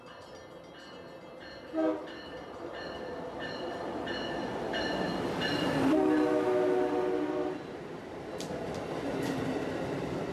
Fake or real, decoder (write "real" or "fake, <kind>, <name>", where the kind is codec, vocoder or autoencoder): real